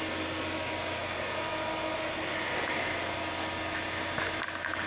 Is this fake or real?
real